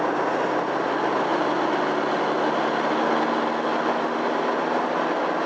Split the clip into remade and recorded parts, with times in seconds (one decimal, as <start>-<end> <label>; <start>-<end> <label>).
0.0-5.5 recorded